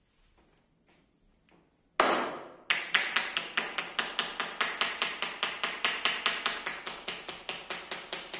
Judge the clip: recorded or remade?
recorded